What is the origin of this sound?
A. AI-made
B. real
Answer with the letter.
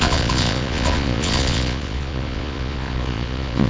A